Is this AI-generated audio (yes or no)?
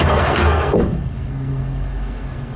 yes